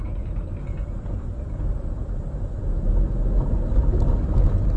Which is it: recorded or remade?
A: recorded